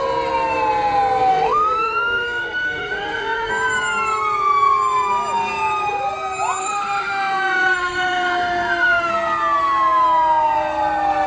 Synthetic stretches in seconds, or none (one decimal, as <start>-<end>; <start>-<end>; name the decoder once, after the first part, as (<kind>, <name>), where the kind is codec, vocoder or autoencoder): 1.3-3.5 (autoencoder, DAC-VAE); 6.6-9.1